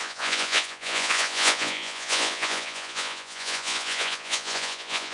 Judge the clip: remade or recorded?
remade